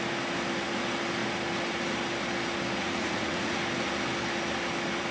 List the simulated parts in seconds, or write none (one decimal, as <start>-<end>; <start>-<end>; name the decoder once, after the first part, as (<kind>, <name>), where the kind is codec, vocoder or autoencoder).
2.8-3.6 (vocoder, Vocos)